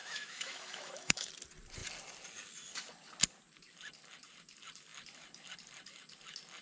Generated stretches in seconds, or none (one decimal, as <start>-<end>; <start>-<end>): 0.0-1.3